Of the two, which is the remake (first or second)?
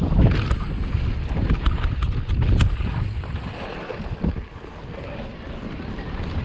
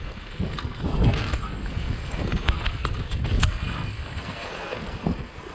second